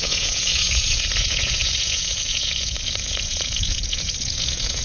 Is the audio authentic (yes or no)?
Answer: no